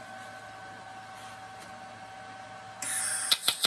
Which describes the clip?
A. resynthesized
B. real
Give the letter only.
B